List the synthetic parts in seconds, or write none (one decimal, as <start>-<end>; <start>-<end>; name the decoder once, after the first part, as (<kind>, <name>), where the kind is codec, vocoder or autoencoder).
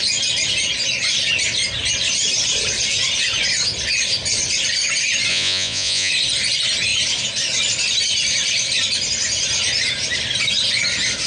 5.3-6.1 (vocoder, Vocos)